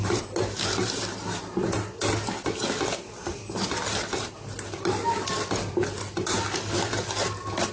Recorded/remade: recorded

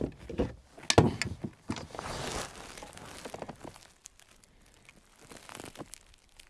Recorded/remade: recorded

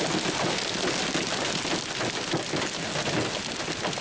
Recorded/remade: recorded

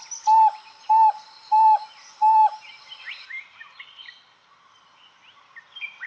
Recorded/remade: recorded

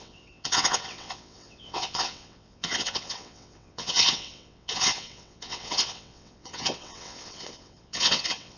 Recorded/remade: remade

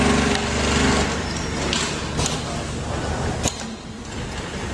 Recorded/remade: recorded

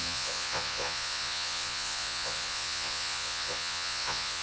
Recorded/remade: remade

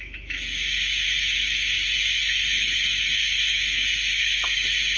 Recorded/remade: remade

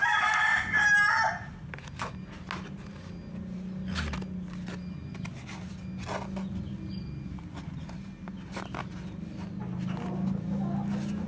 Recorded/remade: recorded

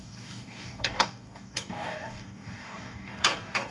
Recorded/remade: remade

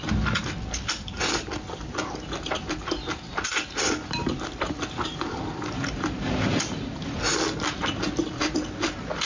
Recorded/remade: recorded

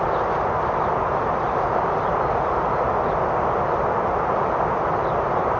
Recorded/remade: recorded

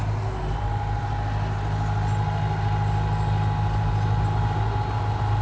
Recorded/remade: recorded